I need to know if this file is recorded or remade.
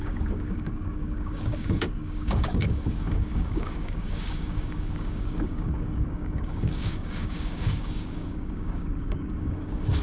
remade